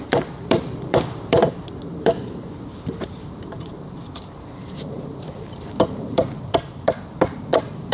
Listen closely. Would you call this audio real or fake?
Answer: fake